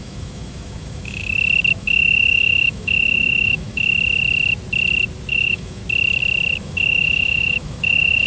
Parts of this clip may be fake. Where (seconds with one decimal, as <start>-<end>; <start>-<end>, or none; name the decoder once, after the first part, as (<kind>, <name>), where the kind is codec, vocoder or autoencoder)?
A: 0.0-1.2 (autoencoder, DAC-VAE); 1.8-3.9; 5.3-5.8; 6.6-8.3